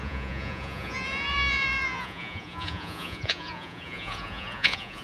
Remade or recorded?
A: remade